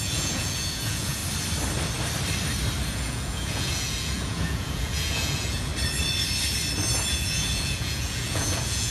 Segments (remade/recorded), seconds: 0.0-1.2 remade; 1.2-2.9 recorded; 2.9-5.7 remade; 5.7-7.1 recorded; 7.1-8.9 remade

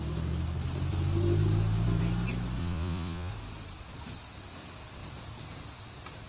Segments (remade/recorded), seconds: 0.0-2.6 recorded; 2.6-3.3 remade; 3.3-6.3 recorded

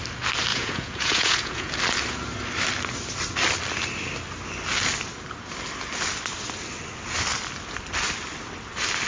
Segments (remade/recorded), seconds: 0.0-0.5 recorded; 0.5-1.7 remade; 1.7-9.1 recorded

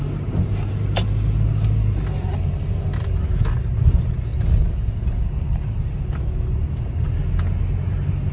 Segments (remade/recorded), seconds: 0.0-8.3 recorded

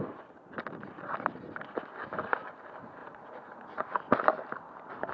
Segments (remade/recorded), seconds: 0.0-3.0 recorded; 3.0-4.0 remade; 4.0-5.1 recorded